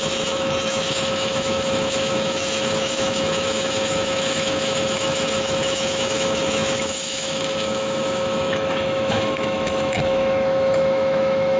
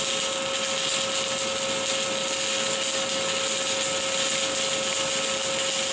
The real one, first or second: second